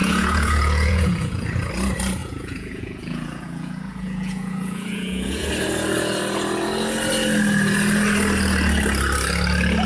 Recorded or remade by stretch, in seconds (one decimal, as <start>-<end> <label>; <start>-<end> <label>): 0.0-1.7 remade; 1.7-2.2 recorded; 2.2-5.5 remade; 5.5-9.9 recorded

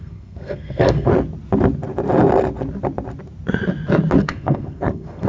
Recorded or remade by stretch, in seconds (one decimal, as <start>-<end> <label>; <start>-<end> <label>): 0.0-1.1 remade; 1.1-4.2 recorded; 4.2-5.3 remade

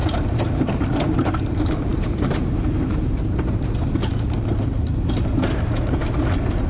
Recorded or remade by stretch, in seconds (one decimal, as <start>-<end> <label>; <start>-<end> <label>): 0.0-1.4 remade; 1.4-1.9 recorded; 1.9-3.6 remade; 3.6-6.7 recorded

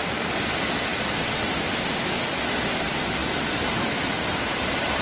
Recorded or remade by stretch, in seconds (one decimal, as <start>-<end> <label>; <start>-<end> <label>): 0.0-3.2 recorded; 3.2-4.0 remade; 4.0-5.0 recorded

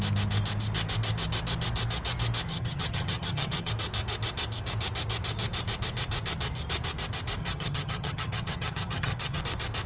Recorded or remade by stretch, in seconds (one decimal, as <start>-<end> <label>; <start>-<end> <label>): 0.0-2.5 recorded; 2.5-3.7 remade; 3.7-7.4 recorded; 7.4-9.4 remade; 9.4-9.9 recorded